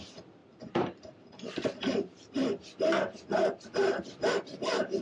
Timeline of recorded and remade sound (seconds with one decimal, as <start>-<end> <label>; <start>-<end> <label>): 0.0-0.4 recorded; 0.4-1.5 remade; 1.5-5.0 recorded